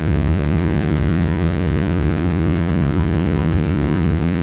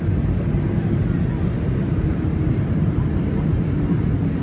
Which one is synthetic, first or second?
first